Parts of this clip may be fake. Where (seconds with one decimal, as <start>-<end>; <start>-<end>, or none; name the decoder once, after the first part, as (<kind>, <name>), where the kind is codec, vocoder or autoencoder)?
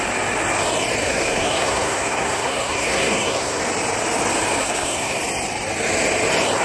1.0-3.6 (codec, SNAC); 4.6-5.2